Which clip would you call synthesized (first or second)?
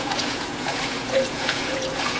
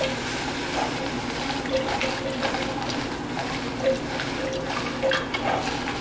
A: first